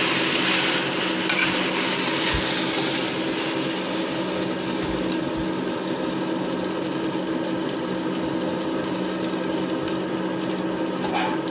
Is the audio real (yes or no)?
yes